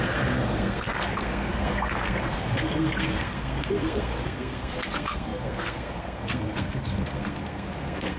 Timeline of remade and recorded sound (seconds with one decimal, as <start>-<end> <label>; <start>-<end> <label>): 0.0-8.2 remade